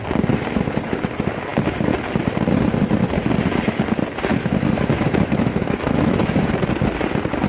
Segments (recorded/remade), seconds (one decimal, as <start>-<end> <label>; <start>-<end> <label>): 0.0-4.3 recorded; 4.3-6.5 remade; 6.5-7.5 recorded